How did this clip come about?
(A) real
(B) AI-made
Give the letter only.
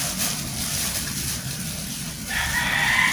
A